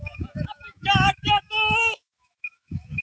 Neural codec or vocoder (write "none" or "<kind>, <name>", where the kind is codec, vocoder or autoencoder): autoencoder, DAC-VAE